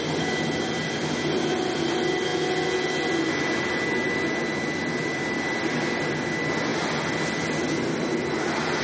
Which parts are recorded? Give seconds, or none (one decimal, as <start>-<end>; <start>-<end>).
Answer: 0.0-8.8